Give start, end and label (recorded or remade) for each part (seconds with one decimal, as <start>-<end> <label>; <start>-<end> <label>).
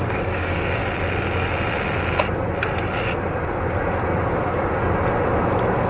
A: 0.0-0.8 remade; 0.8-4.3 recorded; 4.3-4.8 remade; 4.8-5.9 recorded